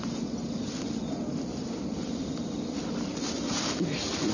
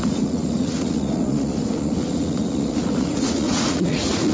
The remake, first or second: second